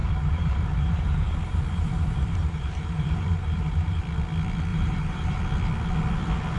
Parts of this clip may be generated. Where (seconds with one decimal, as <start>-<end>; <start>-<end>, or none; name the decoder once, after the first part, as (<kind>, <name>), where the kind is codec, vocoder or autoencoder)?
0.0-4.0 (vocoder, BigVGAN v2); 4.7-5.4